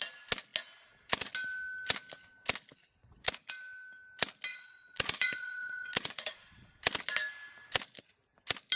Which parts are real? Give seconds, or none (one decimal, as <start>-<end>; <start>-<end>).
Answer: 0.0-3.0; 3.5-4.5; 6.8-8.8